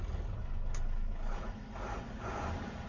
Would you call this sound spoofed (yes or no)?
no